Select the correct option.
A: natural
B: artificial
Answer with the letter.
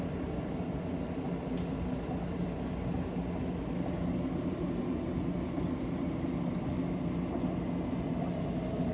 A